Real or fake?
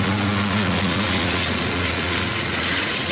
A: fake